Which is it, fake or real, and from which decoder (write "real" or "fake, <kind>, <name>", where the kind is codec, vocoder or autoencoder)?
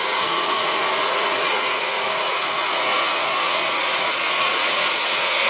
fake, vocoder, Vocos